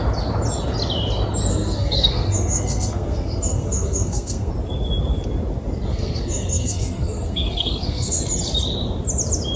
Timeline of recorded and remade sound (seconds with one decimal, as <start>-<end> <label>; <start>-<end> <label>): 0.0-1.5 recorded; 1.5-4.5 remade; 4.5-5.9 recorded; 5.9-8.2 remade; 8.2-9.6 recorded

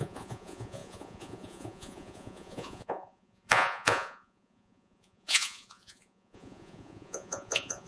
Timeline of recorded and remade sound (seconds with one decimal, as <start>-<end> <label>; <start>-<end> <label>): 0.0-7.9 remade

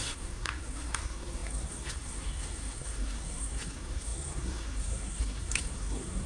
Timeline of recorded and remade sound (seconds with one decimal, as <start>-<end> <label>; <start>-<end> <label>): 0.0-6.3 remade